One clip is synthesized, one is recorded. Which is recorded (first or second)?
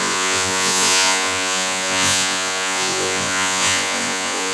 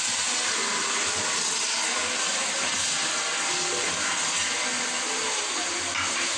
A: second